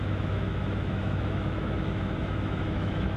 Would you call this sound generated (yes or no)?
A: yes